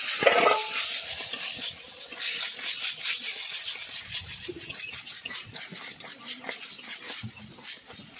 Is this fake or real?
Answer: real